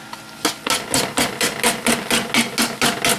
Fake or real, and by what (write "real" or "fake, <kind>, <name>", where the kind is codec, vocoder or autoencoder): real